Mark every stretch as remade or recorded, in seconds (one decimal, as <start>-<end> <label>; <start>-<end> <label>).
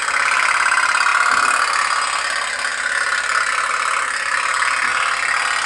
0.0-5.7 recorded